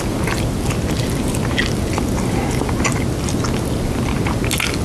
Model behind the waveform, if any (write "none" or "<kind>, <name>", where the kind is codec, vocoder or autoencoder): none